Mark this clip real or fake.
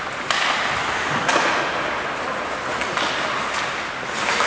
real